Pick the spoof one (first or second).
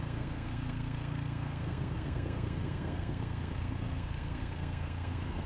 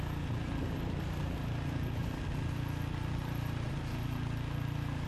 first